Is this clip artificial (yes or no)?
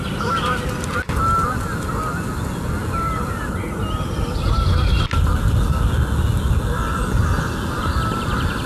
no